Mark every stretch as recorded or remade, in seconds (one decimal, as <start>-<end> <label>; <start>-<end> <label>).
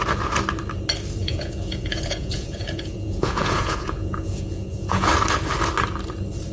0.0-1.2 recorded; 1.2-5.1 remade; 5.1-6.5 recorded